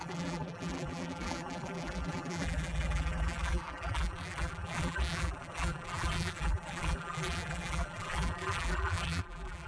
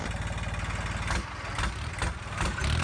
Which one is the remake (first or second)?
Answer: first